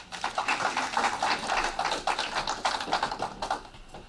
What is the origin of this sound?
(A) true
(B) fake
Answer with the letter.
A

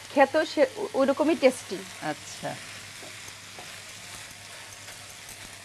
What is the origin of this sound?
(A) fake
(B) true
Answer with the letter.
B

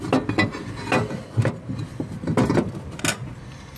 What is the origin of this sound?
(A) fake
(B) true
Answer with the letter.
B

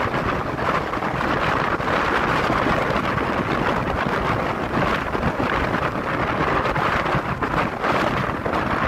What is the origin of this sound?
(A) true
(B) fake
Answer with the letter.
A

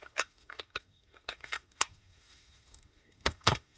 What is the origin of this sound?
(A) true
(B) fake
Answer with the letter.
B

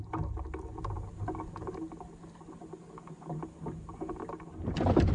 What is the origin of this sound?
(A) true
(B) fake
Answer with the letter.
A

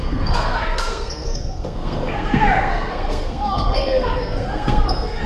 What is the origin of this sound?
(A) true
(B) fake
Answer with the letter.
B